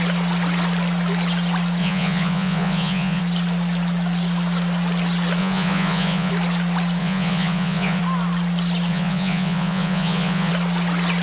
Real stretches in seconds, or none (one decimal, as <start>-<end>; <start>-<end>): 0.0-1.8; 3.2-5.4; 6.3-7.0; 8.0-8.9; 10.5-11.2